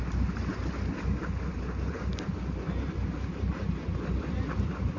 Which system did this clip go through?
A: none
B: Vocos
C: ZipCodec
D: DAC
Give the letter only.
A